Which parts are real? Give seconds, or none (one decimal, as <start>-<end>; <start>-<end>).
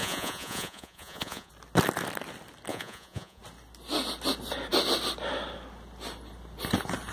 1.5-2.7; 3.4-7.1